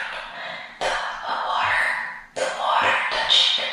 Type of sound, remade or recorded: recorded